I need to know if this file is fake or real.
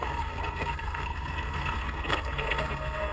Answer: fake